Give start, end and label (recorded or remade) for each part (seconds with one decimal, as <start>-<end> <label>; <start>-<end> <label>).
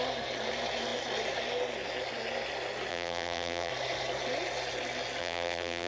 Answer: 0.0-2.9 recorded; 2.9-3.7 remade; 3.7-5.2 recorded; 5.2-5.9 remade